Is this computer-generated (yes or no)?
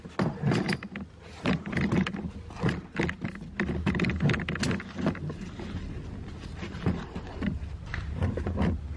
no